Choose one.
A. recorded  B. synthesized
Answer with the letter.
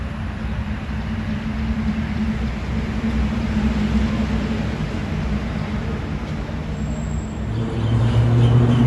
A